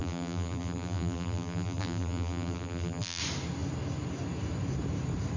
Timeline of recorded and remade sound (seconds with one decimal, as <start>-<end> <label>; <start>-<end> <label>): 0.0-3.2 remade; 3.2-5.4 recorded

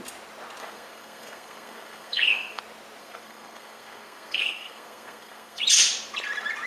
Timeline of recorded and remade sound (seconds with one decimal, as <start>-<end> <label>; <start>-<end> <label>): 0.0-0.6 recorded; 0.6-2.6 remade; 2.6-3.0 recorded; 3.0-5.6 remade; 5.6-6.7 recorded

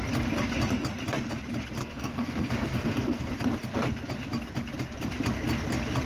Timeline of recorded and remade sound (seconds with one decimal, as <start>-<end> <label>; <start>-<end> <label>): 0.0-1.8 recorded; 1.8-3.3 remade; 3.3-6.1 recorded

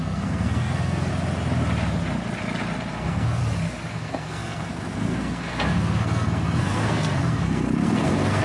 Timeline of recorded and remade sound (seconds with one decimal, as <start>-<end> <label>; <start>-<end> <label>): 0.0-1.1 remade; 1.1-2.9 recorded; 2.9-3.4 remade; 3.4-3.9 recorded; 3.9-8.4 remade

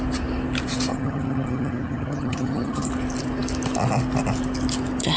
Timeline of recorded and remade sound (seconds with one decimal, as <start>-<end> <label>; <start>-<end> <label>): 0.0-0.9 recorded; 0.9-2.9 remade; 2.9-5.2 recorded

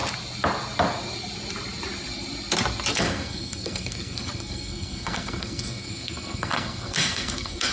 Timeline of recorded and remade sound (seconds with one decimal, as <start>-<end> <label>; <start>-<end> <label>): 0.0-2.9 recorded; 2.9-7.7 remade

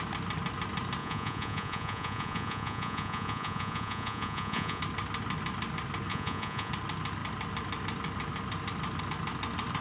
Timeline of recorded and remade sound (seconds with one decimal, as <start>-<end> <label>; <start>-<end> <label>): 0.0-1.0 recorded; 1.0-4.8 remade; 4.8-6.1 recorded; 6.1-6.7 remade; 6.7-9.8 recorded

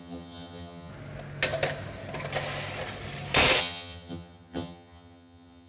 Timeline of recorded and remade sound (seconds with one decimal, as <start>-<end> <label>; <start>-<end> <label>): 0.0-0.9 remade; 0.9-3.6 recorded; 3.6-5.7 remade